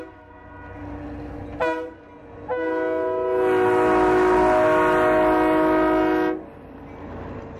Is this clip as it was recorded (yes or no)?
yes